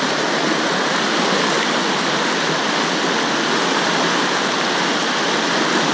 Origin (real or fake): real